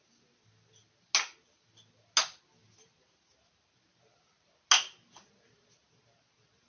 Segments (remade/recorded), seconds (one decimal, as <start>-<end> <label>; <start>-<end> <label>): 0.0-6.7 recorded